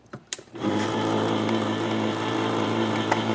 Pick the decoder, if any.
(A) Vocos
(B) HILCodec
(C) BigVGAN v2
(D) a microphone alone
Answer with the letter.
C